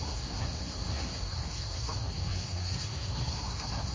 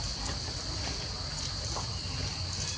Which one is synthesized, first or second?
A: first